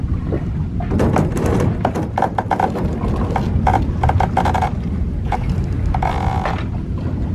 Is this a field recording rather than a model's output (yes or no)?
yes